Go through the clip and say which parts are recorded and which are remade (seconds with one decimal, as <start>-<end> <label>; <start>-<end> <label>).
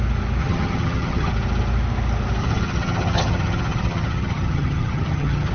0.0-0.4 recorded; 0.4-1.3 remade; 1.3-2.4 recorded; 2.4-5.5 remade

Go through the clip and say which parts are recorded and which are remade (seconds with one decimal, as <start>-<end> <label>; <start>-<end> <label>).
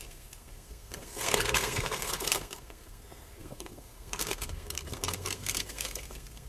0.0-6.5 remade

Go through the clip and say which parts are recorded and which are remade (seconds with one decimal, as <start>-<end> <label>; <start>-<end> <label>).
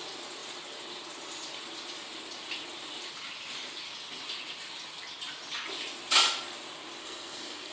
0.0-7.0 recorded; 7.0-7.7 remade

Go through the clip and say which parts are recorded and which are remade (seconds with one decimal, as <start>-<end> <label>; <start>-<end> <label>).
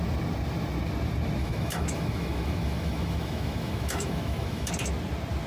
0.0-1.4 recorded; 1.4-4.7 remade; 4.7-5.5 recorded